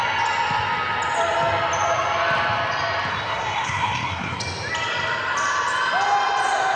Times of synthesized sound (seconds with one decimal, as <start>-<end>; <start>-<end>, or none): 3.1-4.4